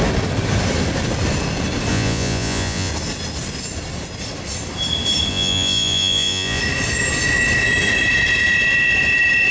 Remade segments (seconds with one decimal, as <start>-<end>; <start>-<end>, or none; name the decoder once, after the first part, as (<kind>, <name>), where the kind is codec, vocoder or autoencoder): 1.9-2.9 (vocoder, Vocos); 5.3-6.6